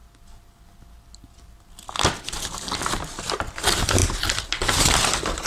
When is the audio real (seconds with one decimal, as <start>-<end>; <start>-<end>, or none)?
0.0-5.5